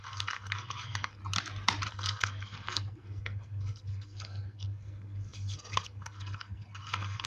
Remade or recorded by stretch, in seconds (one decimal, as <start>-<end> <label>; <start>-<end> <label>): 0.0-1.2 remade; 1.2-1.9 recorded; 1.9-7.3 remade